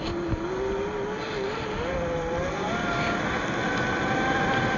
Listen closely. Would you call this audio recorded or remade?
recorded